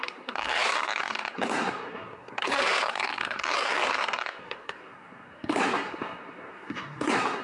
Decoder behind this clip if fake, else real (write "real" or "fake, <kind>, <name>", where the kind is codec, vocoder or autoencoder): fake, codec, SNAC